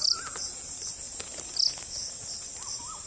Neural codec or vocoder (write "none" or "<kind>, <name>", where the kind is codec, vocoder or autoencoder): none